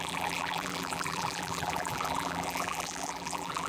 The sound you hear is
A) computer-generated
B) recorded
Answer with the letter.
A